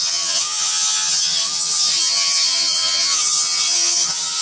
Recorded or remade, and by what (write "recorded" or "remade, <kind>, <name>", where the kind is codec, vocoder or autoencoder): remade, vocoder, HiFi-GAN